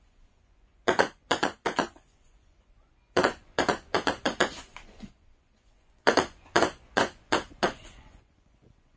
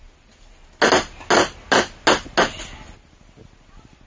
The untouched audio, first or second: second